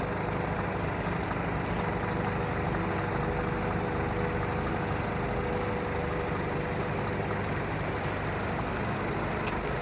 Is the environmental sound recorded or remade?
recorded